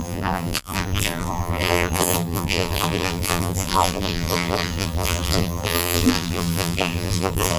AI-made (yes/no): yes